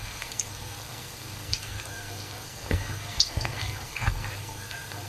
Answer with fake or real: fake